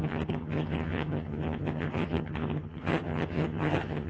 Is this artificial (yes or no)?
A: yes